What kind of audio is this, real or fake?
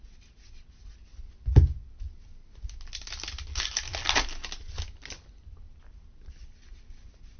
real